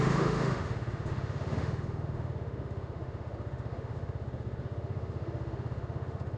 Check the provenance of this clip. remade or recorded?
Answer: remade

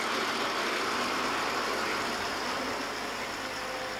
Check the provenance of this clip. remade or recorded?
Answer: recorded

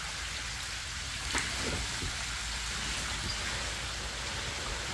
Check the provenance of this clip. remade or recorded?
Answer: recorded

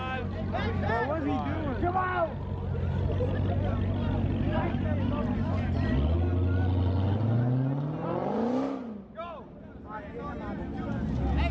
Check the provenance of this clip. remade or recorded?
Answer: recorded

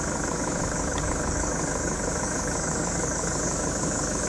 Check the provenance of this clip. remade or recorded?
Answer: remade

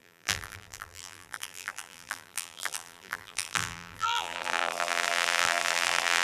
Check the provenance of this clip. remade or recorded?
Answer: remade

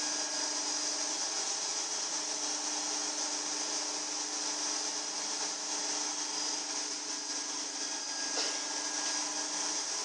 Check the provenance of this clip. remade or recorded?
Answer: recorded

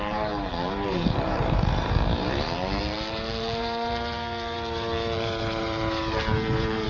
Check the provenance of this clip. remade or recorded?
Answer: remade